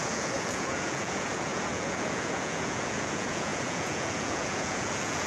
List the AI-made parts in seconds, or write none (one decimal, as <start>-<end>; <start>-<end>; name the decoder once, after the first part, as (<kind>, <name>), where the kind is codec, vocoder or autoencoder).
0.0-5.3 (vocoder, Vocos)